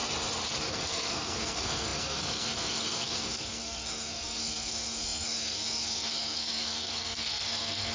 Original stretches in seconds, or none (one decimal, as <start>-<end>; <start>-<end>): 0.0-0.7